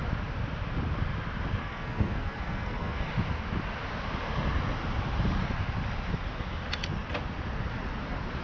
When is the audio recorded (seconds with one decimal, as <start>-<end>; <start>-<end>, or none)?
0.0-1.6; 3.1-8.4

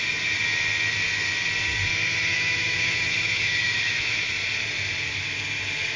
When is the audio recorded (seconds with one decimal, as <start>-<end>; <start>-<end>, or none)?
0.0-2.3; 4.3-6.0

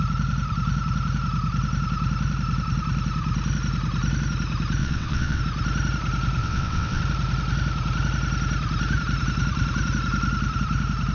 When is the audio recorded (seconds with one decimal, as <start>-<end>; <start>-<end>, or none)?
0.0-4.8; 5.4-6.4; 7.0-11.1

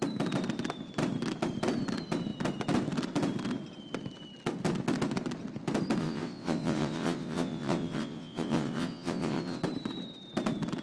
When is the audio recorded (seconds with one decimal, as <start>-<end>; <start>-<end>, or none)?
0.0-6.0; 9.6-10.8

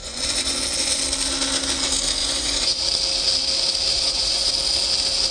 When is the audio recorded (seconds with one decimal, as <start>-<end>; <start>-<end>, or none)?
1.0-2.2; 2.8-3.9; 4.5-5.3

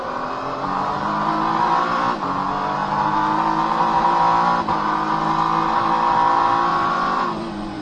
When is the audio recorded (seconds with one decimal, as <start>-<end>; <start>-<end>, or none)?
0.0-6.7

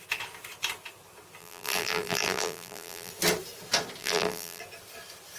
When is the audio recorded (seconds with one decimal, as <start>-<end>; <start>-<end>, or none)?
0.0-1.4; 3.1-4.0; 4.6-5.4